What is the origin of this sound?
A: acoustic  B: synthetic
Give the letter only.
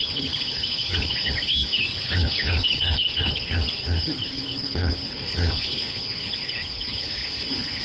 B